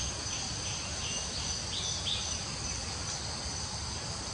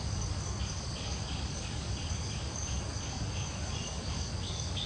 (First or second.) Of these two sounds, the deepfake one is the second